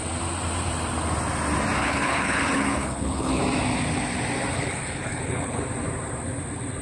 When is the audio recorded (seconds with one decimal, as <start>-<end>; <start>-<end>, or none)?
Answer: 0.0-1.8; 3.4-4.5; 5.6-6.8